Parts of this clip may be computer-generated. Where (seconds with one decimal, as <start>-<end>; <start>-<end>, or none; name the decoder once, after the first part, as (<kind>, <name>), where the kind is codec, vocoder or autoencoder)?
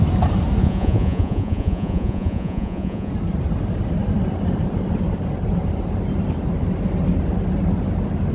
0.6-3.1 (vocoder, Vocos)